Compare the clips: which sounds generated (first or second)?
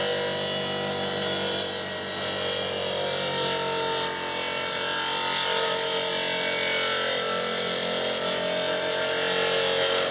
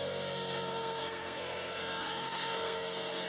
second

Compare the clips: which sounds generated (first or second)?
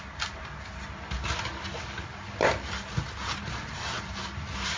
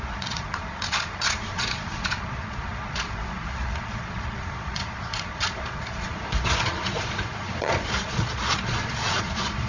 second